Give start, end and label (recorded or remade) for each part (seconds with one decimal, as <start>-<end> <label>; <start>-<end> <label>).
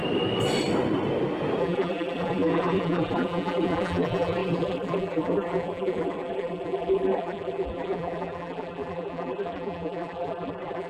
0.0-1.6 recorded; 1.6-10.9 remade